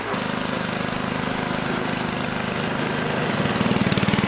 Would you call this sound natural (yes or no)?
yes